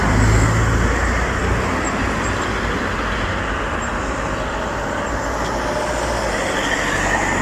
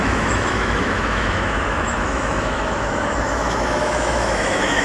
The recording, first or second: first